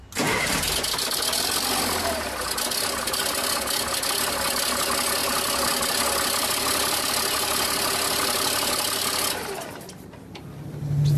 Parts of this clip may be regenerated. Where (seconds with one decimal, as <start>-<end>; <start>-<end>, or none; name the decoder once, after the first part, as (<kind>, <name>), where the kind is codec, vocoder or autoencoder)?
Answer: none